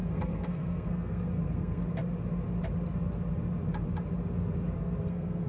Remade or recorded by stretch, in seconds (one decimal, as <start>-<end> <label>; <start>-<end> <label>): 0.0-1.8 remade; 1.8-5.1 recorded; 5.1-5.5 remade